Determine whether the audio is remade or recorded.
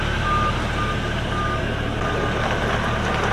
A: recorded